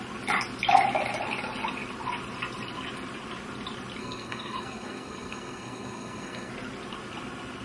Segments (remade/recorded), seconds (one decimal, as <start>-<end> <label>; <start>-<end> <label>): 0.0-4.0 recorded; 4.0-6.5 remade; 6.5-7.6 recorded